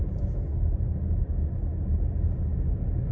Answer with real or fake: real